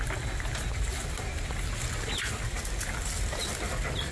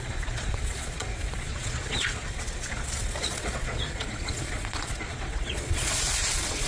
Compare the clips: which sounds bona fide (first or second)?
first